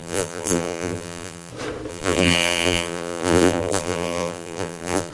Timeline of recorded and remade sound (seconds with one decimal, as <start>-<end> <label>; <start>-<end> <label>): 0.0-1.5 remade; 1.5-1.9 recorded; 1.9-5.1 remade